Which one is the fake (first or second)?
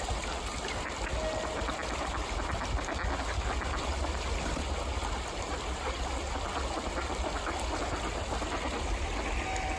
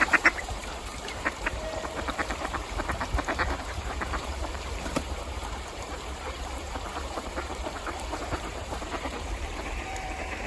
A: second